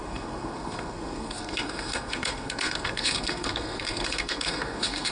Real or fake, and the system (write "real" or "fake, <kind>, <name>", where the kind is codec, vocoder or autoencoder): fake, codec, SNAC